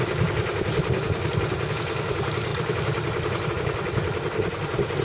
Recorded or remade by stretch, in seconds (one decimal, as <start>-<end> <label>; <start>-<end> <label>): 0.0-1.7 remade; 1.7-2.5 recorded; 2.5-3.5 remade; 3.5-5.0 recorded